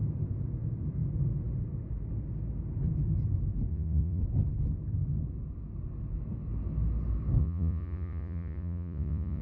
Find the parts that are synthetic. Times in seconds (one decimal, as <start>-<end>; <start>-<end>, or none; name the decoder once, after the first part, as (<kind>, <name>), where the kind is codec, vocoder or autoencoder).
3.7-4.2 (vocoder, Vocos); 7.4-9.4